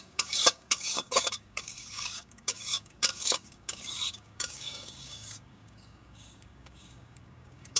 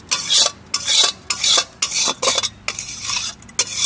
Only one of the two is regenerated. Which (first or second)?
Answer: first